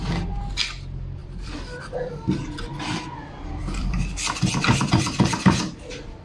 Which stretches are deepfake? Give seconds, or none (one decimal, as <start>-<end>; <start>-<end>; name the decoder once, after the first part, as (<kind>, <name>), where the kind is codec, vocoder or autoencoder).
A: 1.2-4.9 (vocoder, BigVGAN v2)

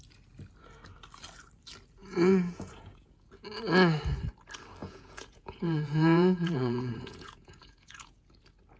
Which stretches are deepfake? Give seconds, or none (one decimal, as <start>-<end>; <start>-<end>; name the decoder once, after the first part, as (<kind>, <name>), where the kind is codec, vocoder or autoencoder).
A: 2.0-3.3 (vocoder, Vocos); 4.8-8.3

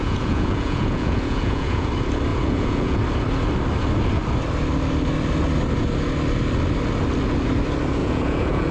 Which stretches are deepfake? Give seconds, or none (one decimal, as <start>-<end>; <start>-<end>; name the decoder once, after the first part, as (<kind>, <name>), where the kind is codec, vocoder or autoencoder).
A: 0.0-1.9 (vocoder, Vocos); 2.3-3.0; 8.0-8.7

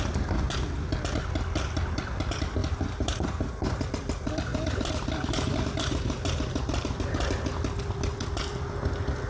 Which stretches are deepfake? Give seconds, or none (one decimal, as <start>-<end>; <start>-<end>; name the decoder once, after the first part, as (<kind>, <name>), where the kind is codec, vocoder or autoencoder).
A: 2.6-3.8 (vocoder, BigVGAN v2); 4.5-6.6

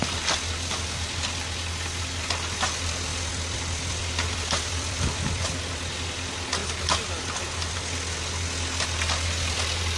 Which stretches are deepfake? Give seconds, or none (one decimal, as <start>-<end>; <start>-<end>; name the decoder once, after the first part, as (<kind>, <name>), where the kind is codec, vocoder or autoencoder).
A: 3.1-5.6 (vocoder, BigVGAN v2)